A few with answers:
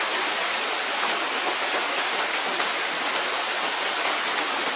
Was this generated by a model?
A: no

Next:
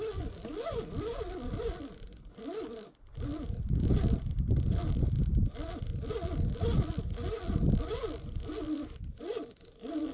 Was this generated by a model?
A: no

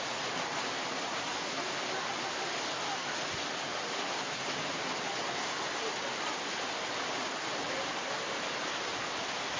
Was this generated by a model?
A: no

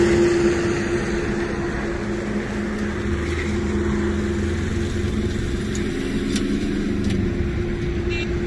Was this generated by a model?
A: no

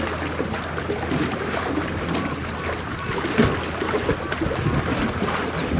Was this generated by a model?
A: no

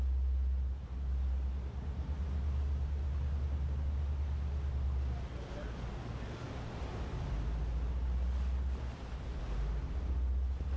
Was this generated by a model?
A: no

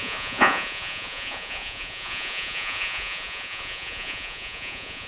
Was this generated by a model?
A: yes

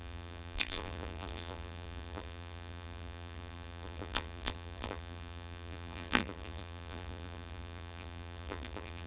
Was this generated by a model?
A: yes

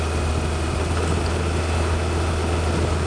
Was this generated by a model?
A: no